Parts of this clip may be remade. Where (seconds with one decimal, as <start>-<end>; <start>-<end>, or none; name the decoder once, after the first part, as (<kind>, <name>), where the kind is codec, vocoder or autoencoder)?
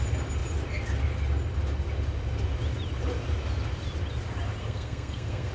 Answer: 4.6-5.5 (codec, SNAC)